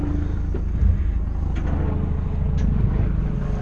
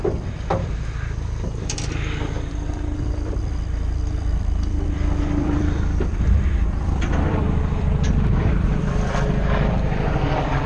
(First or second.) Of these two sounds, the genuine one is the first